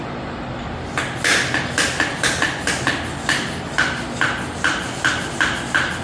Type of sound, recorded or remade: recorded